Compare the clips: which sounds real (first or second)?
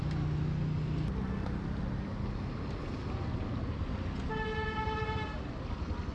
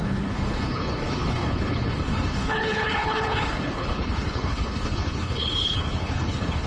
first